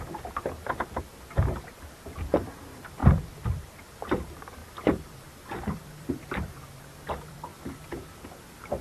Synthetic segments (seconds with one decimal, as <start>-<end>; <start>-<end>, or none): 0.0-3.0; 3.9-4.6; 5.8-7.5; 8.2-8.8